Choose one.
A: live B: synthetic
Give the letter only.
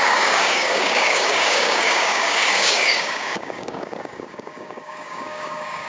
B